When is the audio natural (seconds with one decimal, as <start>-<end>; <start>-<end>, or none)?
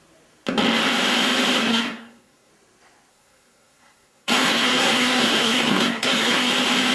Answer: 0.0-1.6; 2.5-3.1; 6.5-6.9